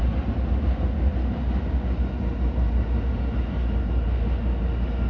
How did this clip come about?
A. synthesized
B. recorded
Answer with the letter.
B